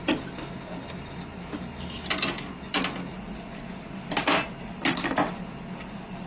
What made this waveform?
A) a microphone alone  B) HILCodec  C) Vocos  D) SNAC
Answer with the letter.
A